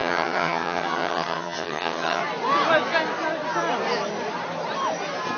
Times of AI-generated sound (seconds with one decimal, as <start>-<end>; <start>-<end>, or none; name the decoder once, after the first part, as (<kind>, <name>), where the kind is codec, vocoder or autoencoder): 0.0-2.2 (vocoder, HiFi-GAN)